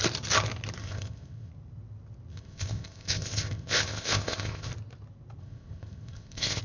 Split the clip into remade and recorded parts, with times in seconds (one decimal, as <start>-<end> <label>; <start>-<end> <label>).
0.0-0.8 recorded; 0.8-1.5 remade; 1.5-2.3 recorded; 2.3-4.7 remade; 4.7-5.4 recorded; 5.4-6.6 remade